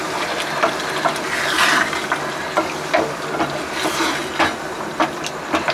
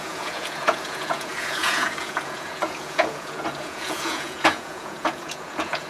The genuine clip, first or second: first